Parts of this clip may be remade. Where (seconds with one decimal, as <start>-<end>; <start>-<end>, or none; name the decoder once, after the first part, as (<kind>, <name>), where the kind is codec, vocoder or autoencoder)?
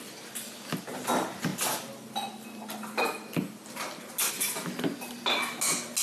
none